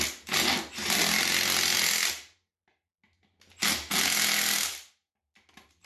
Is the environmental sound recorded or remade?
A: recorded